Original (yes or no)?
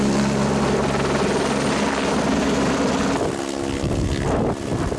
yes